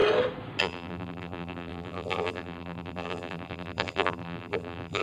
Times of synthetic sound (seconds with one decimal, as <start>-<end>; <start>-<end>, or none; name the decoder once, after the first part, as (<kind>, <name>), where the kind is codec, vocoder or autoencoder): 0.6-5.0 (vocoder, BigVGAN v2)